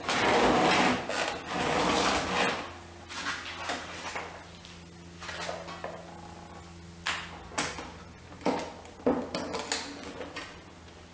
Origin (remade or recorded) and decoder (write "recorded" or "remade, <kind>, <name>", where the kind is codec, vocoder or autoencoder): recorded